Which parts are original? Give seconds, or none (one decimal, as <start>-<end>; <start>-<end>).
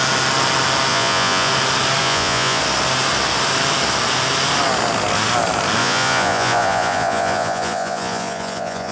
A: 0.0-0.9; 1.5-2.0; 2.6-5.8